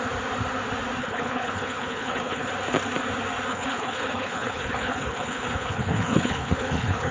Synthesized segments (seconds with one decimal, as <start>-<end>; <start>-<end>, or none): 1.0-2.5; 3.5-7.1